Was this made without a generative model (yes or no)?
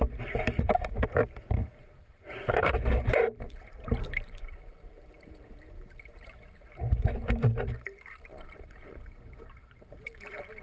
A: no